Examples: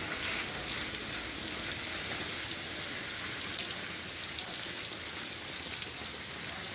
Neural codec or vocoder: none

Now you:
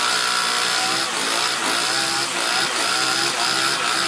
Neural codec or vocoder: none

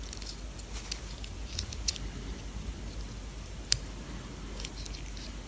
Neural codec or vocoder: none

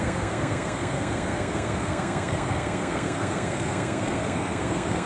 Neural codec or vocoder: codec, SNAC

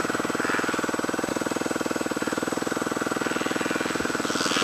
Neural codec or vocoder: none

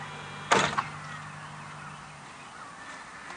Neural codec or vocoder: none